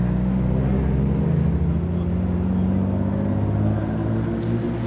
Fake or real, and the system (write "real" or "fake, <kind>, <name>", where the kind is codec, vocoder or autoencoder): real